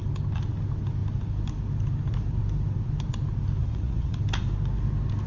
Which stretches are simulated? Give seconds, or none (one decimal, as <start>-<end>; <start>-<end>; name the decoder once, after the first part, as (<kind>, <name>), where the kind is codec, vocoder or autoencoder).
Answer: 3.6-4.2 (vocoder, Vocos)